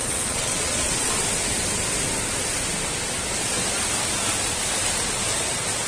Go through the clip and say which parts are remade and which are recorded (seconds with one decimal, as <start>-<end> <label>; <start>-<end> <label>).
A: 0.0-1.1 remade; 1.1-5.9 recorded